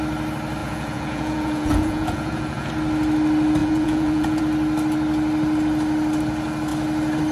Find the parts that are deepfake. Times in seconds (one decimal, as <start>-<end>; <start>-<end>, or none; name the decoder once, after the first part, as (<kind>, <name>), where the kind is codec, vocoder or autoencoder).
0.6-2.7 (vocoder, Vocos); 3.6-4.4